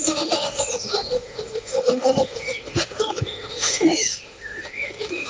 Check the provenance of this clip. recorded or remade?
remade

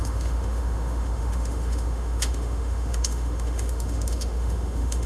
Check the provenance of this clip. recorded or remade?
remade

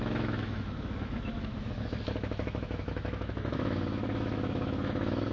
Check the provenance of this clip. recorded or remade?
remade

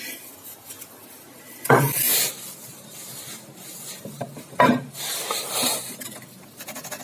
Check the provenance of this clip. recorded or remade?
recorded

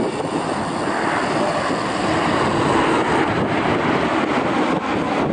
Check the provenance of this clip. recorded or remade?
recorded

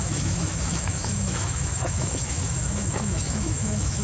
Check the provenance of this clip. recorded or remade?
remade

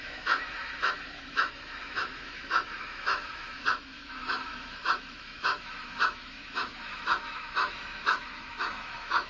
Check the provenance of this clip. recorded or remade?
remade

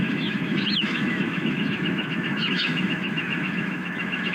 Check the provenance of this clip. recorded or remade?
remade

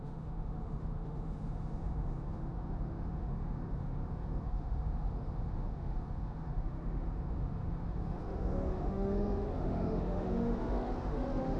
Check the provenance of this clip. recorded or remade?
remade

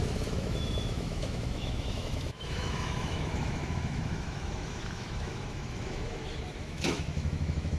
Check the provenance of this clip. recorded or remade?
remade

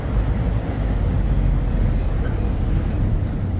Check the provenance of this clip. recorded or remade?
recorded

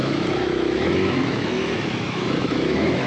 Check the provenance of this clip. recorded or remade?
remade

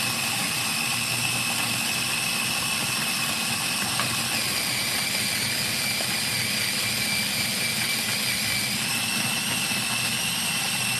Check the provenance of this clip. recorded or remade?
recorded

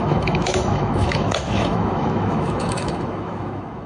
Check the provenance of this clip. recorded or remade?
remade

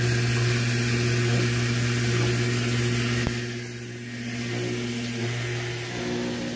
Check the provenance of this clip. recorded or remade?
recorded